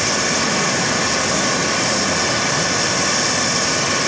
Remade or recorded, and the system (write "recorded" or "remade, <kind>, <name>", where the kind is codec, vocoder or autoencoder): recorded